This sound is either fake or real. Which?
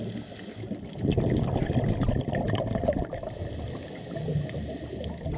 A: real